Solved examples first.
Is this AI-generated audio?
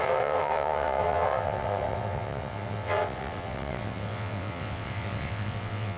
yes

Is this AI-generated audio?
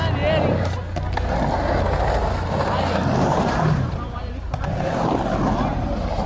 no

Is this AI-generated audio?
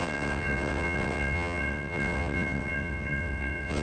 yes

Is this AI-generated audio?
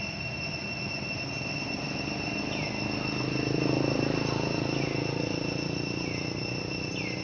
no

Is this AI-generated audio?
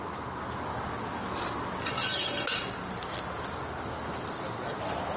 no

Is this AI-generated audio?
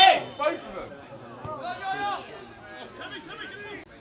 no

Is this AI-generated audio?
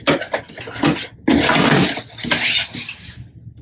no